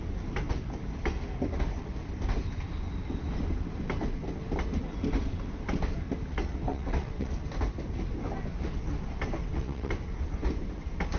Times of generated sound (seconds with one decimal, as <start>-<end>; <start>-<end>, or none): 6.7-7.3; 9.4-9.9